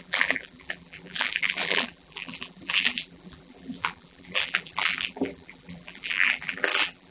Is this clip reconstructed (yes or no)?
yes